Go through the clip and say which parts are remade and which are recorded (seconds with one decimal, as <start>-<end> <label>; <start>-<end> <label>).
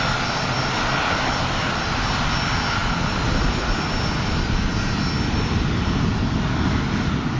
0.0-7.4 recorded